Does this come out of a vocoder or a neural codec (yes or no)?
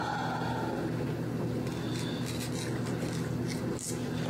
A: no